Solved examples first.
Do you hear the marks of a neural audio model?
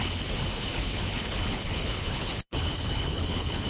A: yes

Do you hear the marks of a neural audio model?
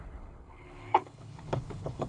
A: yes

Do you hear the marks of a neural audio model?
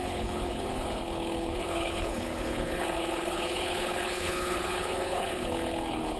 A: yes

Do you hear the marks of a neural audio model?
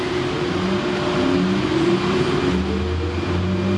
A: no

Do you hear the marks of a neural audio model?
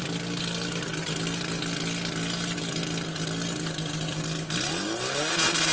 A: no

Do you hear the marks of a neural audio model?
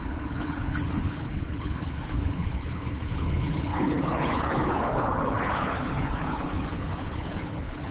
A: yes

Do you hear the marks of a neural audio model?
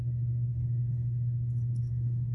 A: yes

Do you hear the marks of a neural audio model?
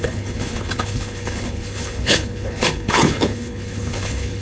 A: yes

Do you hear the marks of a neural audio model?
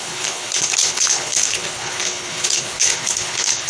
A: yes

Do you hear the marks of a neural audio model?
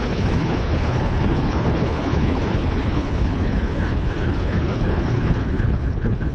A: yes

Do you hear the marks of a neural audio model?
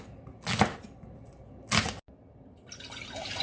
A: no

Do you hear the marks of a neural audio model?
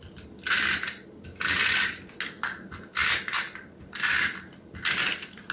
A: no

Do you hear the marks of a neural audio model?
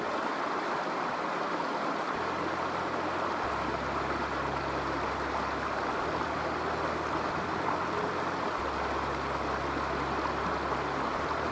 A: no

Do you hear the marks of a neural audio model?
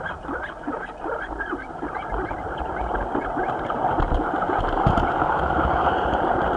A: no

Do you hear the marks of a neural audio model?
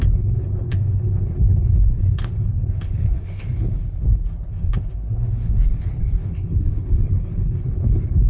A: yes